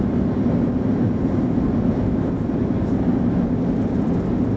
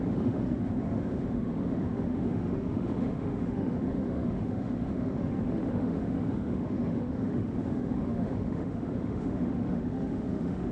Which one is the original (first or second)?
first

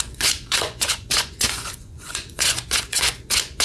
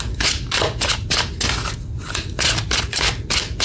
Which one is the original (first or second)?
second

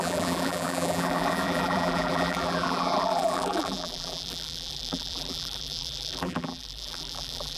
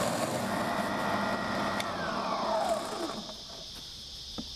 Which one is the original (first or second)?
second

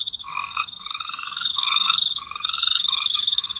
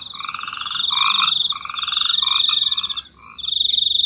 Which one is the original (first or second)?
second